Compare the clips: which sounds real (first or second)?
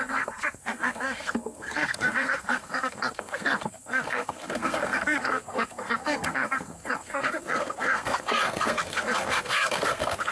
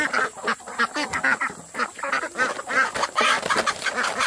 second